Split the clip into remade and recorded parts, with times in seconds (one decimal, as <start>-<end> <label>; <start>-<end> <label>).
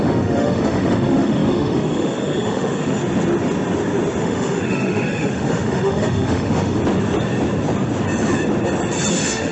0.0-3.0 remade; 3.0-4.2 recorded; 4.2-6.8 remade; 6.8-9.1 recorded; 9.1-9.5 remade